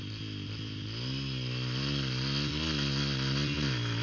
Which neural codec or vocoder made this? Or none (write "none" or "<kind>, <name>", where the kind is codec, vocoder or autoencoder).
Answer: none